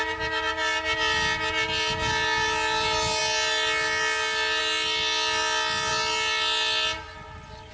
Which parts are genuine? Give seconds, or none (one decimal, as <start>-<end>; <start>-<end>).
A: 0.0-7.7

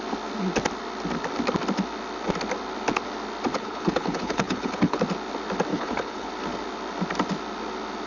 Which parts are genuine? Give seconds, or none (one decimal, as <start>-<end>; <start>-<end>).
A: 0.0-3.5; 5.0-5.7; 6.3-8.1

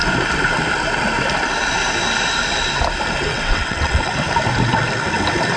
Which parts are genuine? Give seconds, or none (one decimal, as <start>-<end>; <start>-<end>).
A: 0.0-3.3; 4.1-5.6

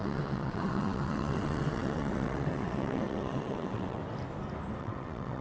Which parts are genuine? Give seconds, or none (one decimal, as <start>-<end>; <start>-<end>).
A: 4.0-4.8